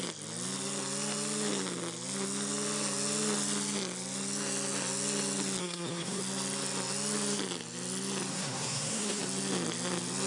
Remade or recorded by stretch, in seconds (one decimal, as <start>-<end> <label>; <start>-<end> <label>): 0.0-5.6 recorded; 5.6-6.2 remade; 6.2-8.3 recorded; 8.3-9.2 remade; 9.2-10.3 recorded